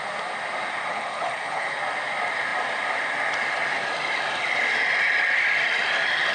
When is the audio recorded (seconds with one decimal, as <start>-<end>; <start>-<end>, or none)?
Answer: 0.0-0.9; 1.8-6.3